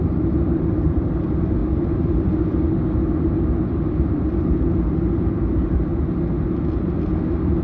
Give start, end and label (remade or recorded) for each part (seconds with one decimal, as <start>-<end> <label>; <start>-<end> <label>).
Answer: 0.0-1.6 remade; 1.6-4.0 recorded; 4.0-5.9 remade; 5.9-7.6 recorded

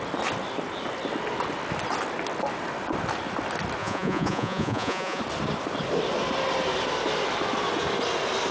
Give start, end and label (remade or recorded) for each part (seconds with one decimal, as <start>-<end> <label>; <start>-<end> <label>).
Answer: 0.0-3.8 recorded; 3.8-5.2 remade; 5.2-8.5 recorded